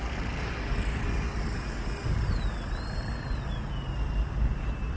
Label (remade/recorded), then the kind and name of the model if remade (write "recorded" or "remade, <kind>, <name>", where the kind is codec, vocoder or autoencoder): recorded